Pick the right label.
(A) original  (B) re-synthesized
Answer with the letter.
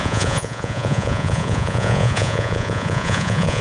B